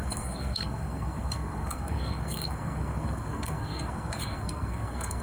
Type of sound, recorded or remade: remade